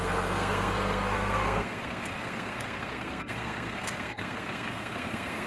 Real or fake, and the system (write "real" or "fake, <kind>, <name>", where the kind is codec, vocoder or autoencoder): fake, codec, SNAC